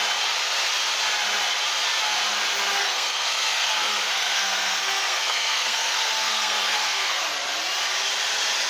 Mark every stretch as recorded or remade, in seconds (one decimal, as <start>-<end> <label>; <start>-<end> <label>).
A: 0.0-2.8 recorded; 2.8-7.2 remade; 7.2-8.7 recorded